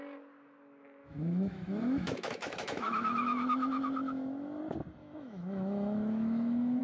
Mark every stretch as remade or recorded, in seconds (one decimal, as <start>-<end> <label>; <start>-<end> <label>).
0.0-1.0 recorded; 1.0-4.6 remade; 4.6-5.0 recorded; 5.0-6.8 remade